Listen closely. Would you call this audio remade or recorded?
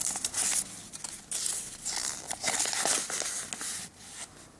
recorded